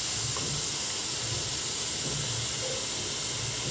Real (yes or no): yes